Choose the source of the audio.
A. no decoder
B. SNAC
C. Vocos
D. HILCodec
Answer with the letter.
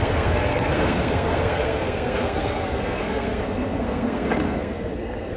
B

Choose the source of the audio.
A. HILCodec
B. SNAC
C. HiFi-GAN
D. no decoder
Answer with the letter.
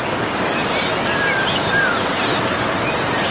D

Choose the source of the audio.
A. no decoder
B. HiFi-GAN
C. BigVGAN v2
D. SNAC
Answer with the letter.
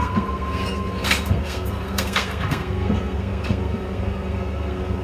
D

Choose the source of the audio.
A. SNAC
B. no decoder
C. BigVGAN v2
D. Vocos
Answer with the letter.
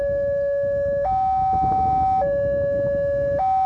B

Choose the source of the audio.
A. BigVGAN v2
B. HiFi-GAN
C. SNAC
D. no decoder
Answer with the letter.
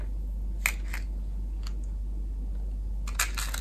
D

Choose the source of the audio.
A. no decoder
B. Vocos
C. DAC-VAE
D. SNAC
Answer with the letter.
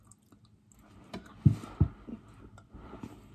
A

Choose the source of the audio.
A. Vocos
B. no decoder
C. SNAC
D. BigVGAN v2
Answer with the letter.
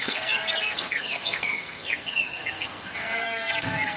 C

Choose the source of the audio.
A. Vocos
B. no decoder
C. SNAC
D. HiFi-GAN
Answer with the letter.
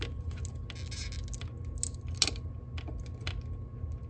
B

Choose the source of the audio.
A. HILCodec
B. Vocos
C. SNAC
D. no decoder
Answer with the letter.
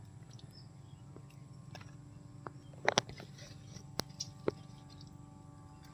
D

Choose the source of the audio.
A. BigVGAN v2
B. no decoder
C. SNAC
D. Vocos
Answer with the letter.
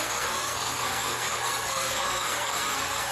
C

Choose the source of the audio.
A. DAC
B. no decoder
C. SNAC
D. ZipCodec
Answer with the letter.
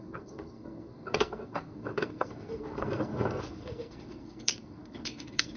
C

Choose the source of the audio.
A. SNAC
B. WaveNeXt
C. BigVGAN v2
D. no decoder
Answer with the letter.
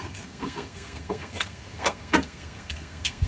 A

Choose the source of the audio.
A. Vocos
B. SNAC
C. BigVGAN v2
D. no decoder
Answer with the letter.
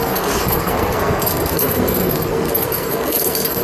B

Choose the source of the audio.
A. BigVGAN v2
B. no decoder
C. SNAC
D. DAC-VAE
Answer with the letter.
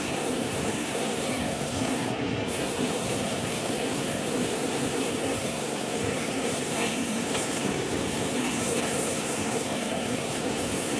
C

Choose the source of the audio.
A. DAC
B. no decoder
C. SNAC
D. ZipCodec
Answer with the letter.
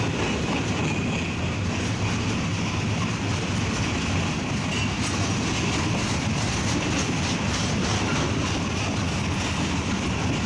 B